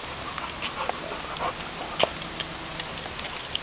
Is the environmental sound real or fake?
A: real